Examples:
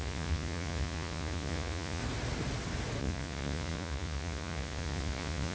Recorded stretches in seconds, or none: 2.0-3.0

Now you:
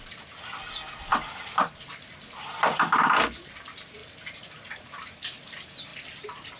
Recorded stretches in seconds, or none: 0.0-1.1; 1.9-4.0; 4.9-6.6

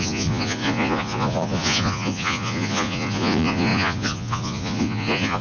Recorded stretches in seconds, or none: none

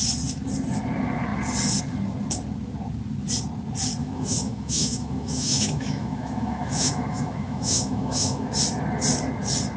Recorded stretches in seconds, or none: 0.0-4.0; 8.5-9.8

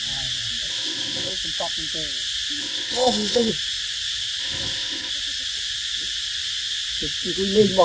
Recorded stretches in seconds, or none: 0.0-0.7; 1.3-2.6; 3.5-4.4; 5.1-7.8